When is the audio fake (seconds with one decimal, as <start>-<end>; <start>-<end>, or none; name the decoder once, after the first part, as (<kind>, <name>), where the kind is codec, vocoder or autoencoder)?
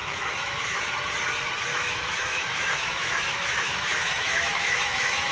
0.0-0.8 (autoencoder, DAC-VAE); 1.7-5.3